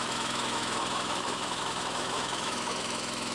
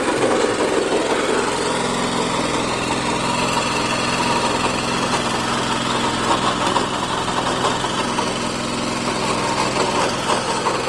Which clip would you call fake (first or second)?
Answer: first